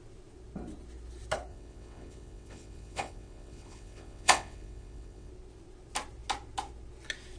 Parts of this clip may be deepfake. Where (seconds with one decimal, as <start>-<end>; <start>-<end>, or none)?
1.5-5.3